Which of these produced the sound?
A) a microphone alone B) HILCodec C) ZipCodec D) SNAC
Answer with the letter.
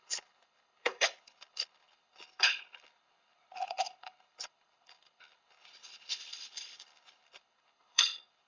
B